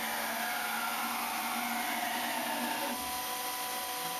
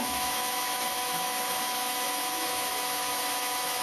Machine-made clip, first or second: second